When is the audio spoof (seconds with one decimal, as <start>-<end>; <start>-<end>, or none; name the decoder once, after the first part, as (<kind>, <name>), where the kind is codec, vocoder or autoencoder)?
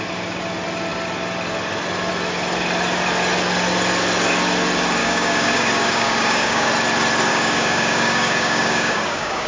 5.0-6.7 (codec, DAC); 7.3-9.5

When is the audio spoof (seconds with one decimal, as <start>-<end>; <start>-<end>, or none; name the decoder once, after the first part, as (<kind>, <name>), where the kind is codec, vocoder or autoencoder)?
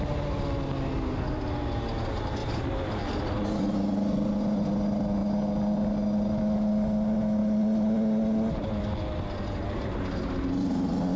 none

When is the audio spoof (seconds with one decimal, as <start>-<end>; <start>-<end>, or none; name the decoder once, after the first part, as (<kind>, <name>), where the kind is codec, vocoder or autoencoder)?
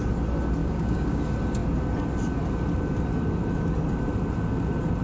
0.6-1.2 (codec, DAC)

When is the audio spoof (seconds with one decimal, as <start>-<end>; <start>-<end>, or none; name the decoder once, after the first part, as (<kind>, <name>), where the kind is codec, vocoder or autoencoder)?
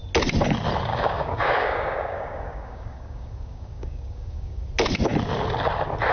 0.9-4.6 (codec, DAC)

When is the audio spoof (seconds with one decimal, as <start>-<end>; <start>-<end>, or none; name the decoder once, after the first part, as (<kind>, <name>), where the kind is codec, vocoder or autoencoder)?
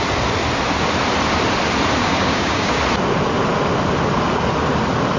2.0-2.8 (codec, DAC)